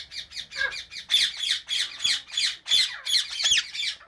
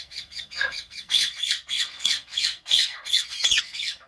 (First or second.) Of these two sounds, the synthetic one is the second